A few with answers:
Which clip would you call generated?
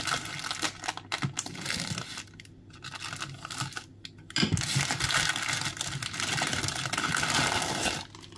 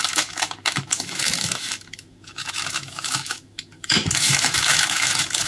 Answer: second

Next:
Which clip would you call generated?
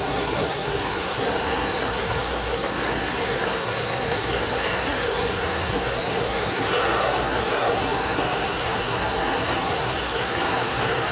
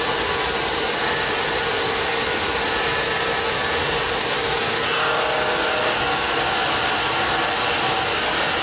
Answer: first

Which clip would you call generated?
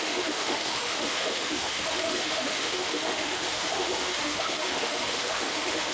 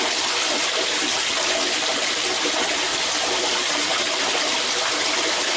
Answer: first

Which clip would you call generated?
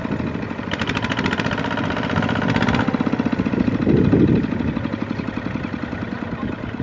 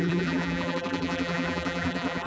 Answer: second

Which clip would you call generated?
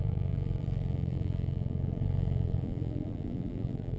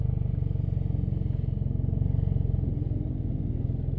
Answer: first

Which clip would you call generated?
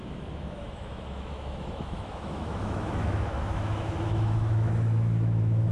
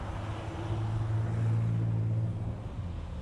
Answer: first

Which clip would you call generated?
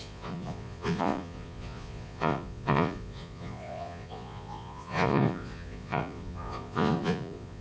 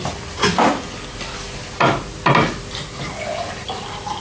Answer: first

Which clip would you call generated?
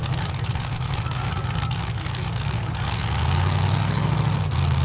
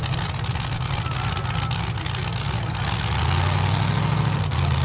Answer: first